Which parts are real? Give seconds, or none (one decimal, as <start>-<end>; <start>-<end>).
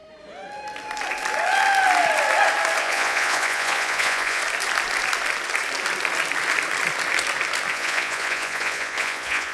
0.0-2.8; 4.4-7.7